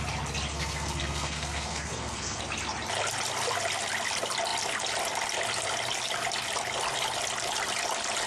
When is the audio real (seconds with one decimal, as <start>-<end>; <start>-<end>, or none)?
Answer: 0.0-0.5; 2.4-8.3